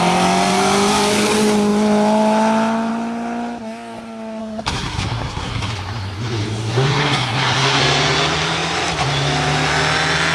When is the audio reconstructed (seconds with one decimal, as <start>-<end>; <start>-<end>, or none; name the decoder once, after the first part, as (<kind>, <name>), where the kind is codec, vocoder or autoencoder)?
4.4-5.7 (codec, SNAC); 6.6-7.8